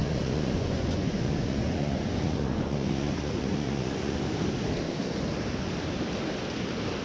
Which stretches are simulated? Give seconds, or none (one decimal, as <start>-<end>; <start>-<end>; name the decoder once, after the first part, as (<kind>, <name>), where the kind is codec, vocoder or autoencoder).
0.0-4.2 (vocoder, Vocos)